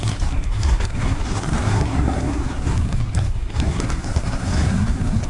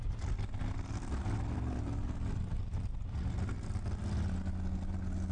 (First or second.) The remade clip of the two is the first